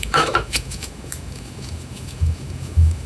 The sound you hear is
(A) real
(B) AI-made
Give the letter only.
B